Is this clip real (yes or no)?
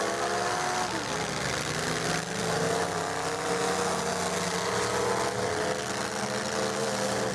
yes